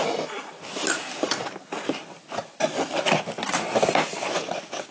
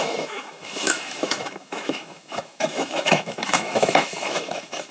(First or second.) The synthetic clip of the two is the second